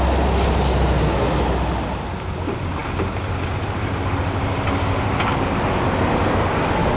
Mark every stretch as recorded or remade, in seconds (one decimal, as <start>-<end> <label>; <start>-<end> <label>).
0.0-7.0 recorded